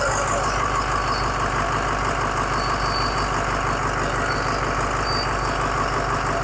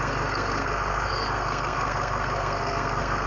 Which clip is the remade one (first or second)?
second